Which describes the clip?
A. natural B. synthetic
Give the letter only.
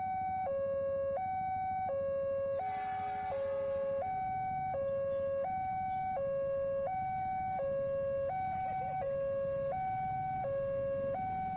A